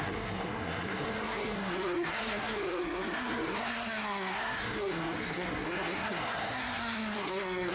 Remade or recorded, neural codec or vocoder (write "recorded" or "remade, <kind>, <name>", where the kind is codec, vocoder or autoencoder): remade, codec, SNAC